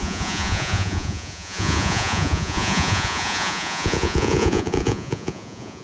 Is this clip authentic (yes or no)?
no